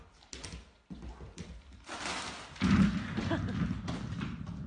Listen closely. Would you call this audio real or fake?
real